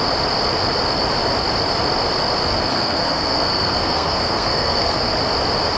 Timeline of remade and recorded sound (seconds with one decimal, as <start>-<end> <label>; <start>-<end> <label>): 0.0-2.7 recorded; 2.7-5.1 remade; 5.1-5.8 recorded